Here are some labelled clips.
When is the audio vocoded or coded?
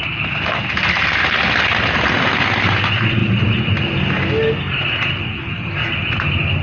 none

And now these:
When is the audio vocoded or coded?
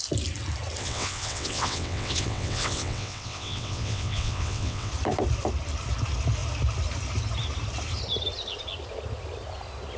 0.8-4.9 (vocoder, WaveNeXt)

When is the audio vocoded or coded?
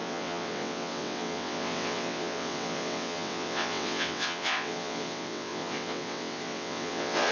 0.0-7.3 (vocoder, WaveNeXt)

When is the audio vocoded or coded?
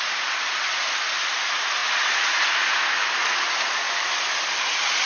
none